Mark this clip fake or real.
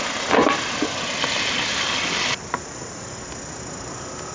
real